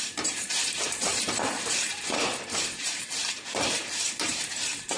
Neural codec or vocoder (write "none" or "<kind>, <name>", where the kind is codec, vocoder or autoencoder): vocoder, BigVGAN v2